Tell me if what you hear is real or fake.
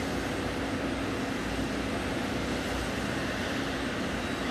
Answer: real